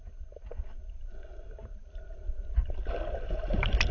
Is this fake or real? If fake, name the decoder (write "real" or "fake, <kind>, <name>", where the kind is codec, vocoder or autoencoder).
real